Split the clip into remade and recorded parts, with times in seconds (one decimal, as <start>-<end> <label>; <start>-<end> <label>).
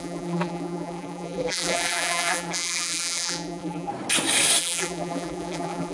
0.0-3.9 remade; 3.9-4.6 recorded; 4.6-5.9 remade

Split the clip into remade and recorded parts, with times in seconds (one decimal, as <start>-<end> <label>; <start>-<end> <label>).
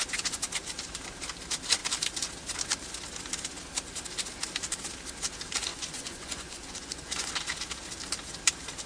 0.0-5.7 recorded; 5.7-7.3 remade; 7.3-8.9 recorded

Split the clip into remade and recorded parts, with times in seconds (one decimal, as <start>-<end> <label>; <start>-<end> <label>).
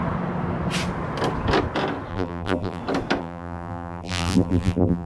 0.0-2.1 recorded; 2.1-2.8 remade; 2.8-3.2 recorded; 3.2-5.1 remade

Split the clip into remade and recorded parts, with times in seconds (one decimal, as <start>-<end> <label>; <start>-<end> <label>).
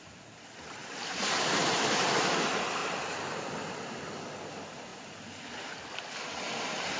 0.0-0.8 recorded; 0.8-2.2 remade; 2.2-4.9 recorded; 4.9-5.7 remade; 5.7-7.0 recorded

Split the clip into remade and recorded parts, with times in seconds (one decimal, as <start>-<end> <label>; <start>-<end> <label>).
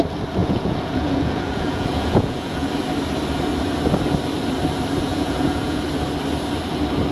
0.0-0.4 recorded; 0.4-2.7 remade; 2.7-5.1 recorded; 5.1-5.8 remade; 5.8-7.1 recorded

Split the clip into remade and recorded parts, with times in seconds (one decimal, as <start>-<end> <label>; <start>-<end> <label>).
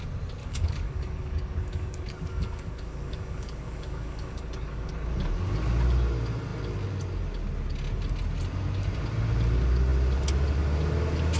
0.0-0.4 recorded; 0.4-4.9 remade; 4.9-11.4 recorded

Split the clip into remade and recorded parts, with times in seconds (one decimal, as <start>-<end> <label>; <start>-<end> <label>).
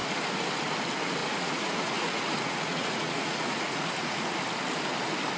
0.0-1.2 recorded; 1.2-4.4 remade; 4.4-5.4 recorded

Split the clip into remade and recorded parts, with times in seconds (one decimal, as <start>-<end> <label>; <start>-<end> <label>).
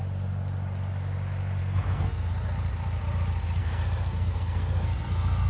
0.0-1.6 recorded; 1.6-2.3 remade; 2.3-3.6 recorded; 3.6-5.5 remade